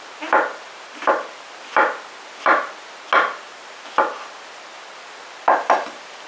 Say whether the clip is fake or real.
real